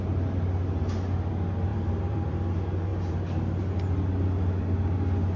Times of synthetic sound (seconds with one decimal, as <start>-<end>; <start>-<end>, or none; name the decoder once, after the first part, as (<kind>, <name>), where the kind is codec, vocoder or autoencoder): 1.7-2.3 (vocoder, BigVGAN v2); 2.9-3.6